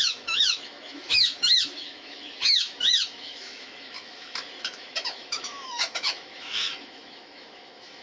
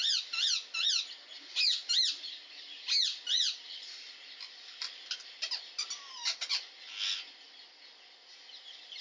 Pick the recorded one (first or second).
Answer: second